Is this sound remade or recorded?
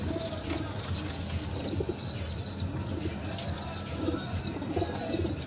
recorded